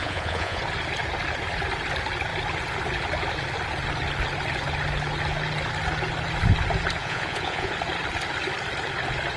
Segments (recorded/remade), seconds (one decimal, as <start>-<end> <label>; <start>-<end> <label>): 0.0-0.6 remade; 0.6-7.0 recorded; 7.0-7.7 remade; 7.7-9.4 recorded

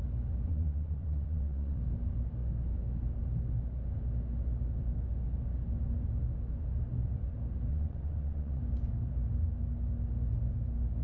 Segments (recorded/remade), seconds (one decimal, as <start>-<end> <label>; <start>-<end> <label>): 0.0-0.5 recorded; 0.5-1.8 remade; 1.8-7.7 recorded; 7.7-8.6 remade; 8.6-11.0 recorded

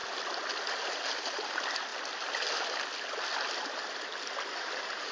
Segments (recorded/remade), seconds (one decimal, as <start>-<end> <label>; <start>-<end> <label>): 0.0-0.7 recorded; 0.7-1.9 remade; 1.9-4.6 recorded; 4.6-5.1 remade

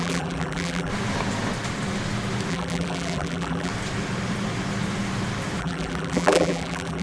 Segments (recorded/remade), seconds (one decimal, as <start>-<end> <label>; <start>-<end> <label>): 0.0-0.9 remade; 0.9-2.5 recorded; 2.5-3.7 remade; 3.7-5.6 recorded; 5.6-7.0 remade

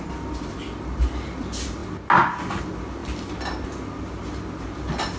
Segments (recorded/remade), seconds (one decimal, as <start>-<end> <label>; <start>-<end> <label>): 0.0-5.2 recorded